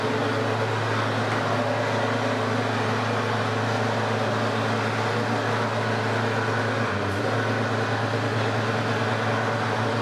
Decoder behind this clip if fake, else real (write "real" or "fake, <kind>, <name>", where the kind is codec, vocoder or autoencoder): real